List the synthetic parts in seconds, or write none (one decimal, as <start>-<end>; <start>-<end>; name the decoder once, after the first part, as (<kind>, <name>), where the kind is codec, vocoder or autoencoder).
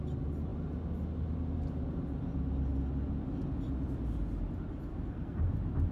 4.9-5.5 (codec, SNAC)